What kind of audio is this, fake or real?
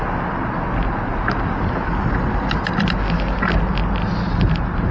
real